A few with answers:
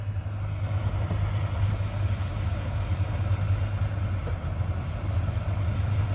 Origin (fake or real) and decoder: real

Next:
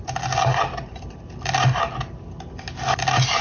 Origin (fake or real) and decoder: real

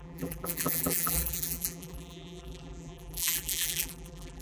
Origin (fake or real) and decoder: fake, vocoder, BigVGAN v2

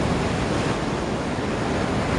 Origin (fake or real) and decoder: real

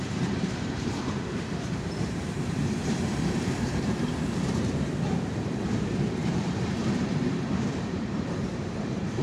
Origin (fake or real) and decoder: fake, vocoder, BigVGAN v2